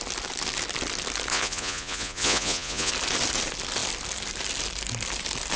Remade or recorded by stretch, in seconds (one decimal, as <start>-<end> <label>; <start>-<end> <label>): 0.0-1.3 recorded; 1.3-2.9 remade; 2.9-5.6 recorded